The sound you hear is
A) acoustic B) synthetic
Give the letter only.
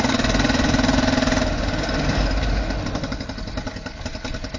A